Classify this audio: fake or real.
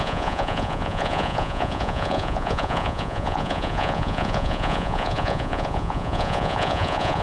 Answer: fake